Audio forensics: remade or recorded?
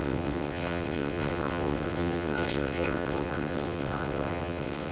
remade